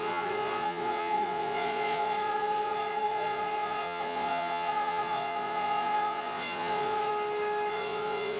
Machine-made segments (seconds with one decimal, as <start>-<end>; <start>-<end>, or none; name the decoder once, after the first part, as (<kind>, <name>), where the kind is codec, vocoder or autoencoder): 0.0-7.1 (vocoder, Vocos); 7.7-8.4